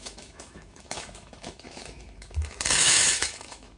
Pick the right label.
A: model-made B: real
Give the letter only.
A